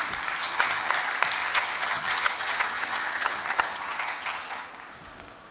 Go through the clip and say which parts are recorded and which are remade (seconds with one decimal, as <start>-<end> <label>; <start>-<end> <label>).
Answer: 0.0-0.4 recorded; 0.4-0.9 remade; 0.9-1.4 recorded; 1.4-4.7 remade; 4.7-5.5 recorded